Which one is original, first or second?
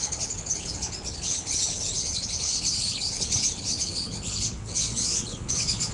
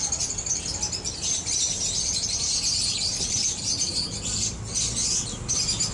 second